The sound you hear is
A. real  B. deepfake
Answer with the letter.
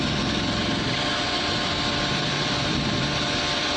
B